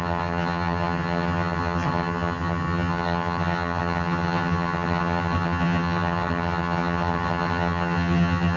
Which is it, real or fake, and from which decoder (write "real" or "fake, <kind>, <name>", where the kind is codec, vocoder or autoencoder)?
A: fake, vocoder, HiFi-GAN